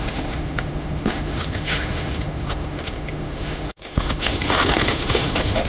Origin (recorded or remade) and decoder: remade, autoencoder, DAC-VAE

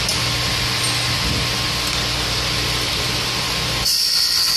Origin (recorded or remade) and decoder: recorded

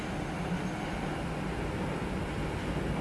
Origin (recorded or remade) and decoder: recorded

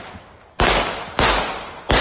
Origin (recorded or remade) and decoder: recorded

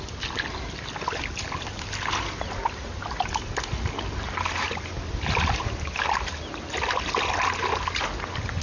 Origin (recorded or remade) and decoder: recorded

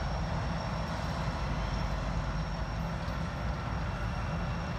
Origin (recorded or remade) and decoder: recorded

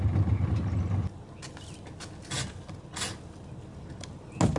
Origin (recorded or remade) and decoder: recorded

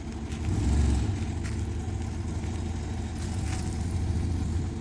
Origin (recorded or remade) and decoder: recorded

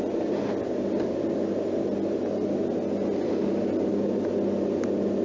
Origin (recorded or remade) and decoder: recorded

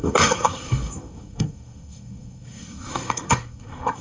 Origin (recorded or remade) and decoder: remade, codec, SNAC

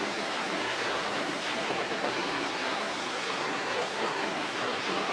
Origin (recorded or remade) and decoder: remade, codec, SNAC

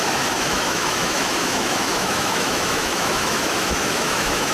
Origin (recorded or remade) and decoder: remade, autoencoder, DAC-VAE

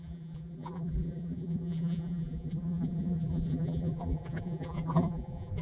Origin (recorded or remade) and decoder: remade, vocoder, BigVGAN v2